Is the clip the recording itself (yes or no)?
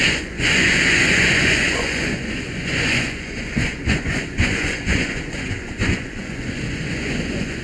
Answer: no